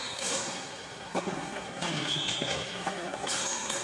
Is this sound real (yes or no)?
no